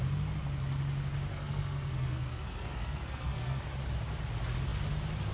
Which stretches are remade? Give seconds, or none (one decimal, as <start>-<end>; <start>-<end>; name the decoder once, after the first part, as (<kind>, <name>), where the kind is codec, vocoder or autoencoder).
1.3-3.6 (codec, SNAC)